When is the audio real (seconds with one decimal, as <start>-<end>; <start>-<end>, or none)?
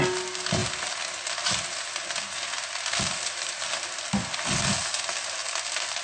0.0-6.0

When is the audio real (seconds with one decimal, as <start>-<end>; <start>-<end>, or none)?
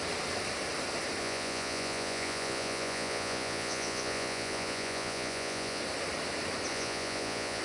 0.0-1.2; 5.8-6.7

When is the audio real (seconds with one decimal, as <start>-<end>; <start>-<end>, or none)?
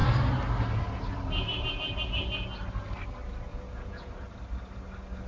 0.0-3.5; 4.1-5.3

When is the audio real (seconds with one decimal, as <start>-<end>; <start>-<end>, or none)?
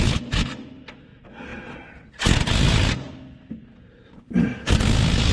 0.0-5.3